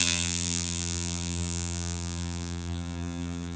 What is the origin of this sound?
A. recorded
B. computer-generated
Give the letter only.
B